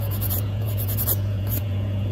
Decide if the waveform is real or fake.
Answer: fake